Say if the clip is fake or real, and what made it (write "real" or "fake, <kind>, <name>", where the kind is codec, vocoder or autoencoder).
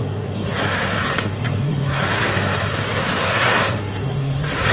fake, codec, SNAC